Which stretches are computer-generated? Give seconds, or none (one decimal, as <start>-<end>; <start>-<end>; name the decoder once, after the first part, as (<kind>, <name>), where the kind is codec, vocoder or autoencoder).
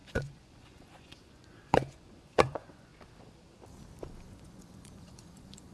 0.0-2.9 (vocoder, Vocos); 4.3-5.7